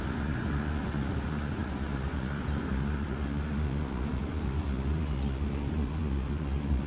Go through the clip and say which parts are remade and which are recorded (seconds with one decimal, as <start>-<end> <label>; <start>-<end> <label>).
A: 0.0-6.9 remade